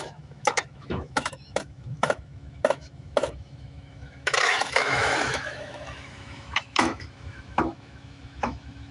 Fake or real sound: fake